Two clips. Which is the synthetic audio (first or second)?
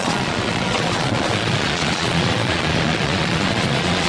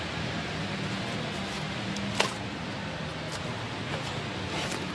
first